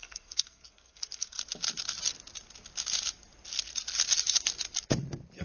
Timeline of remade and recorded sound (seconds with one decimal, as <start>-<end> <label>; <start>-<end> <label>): 0.0-1.4 remade; 1.4-5.4 recorded